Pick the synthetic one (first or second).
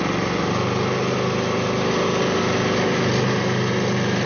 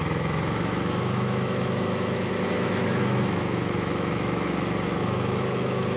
second